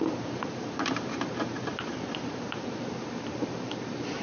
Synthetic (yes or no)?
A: yes